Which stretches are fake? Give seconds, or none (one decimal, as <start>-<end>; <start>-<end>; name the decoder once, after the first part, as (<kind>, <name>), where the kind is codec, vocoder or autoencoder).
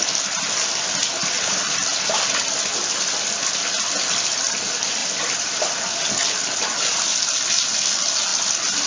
5.0-5.8 (vocoder, BigVGAN v2)